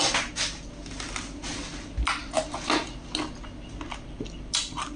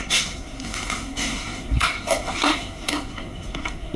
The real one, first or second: first